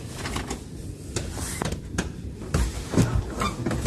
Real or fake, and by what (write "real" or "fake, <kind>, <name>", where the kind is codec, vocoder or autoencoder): real